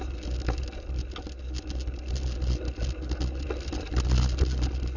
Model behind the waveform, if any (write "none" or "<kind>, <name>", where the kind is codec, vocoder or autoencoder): none